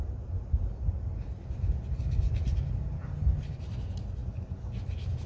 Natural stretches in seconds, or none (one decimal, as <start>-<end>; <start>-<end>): 0.0-5.3